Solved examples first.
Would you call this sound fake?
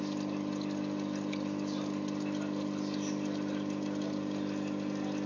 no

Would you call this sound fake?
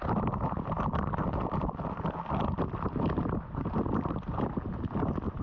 no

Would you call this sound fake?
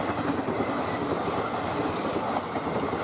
no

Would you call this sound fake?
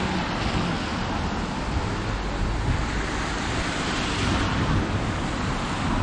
no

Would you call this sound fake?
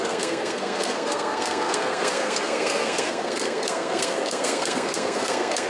yes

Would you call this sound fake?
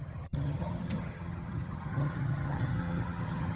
yes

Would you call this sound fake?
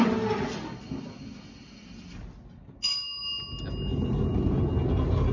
no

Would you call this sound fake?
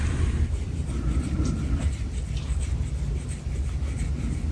no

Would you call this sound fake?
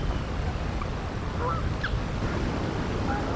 no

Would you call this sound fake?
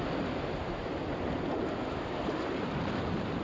no